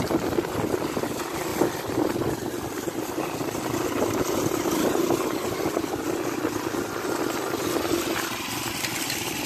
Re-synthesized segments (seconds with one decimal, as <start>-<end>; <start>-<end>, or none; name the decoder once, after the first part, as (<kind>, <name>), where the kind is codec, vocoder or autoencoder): none